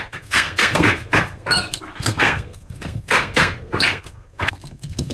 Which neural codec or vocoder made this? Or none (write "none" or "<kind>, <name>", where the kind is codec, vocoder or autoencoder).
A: codec, SNAC